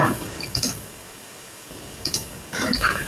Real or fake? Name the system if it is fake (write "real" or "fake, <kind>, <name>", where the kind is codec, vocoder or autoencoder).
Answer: fake, codec, DAC